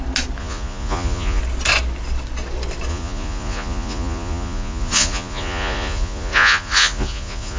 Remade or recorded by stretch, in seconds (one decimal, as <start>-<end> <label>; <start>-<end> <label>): 0.0-0.4 recorded; 0.4-1.4 remade; 1.4-2.9 recorded; 2.9-7.6 remade